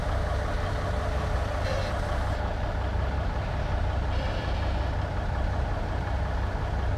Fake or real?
real